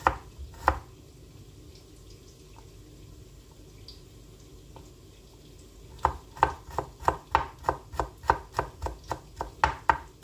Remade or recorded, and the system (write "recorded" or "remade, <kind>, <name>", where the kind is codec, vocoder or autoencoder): recorded